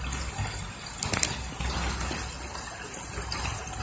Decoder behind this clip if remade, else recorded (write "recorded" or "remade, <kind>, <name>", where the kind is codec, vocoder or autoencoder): recorded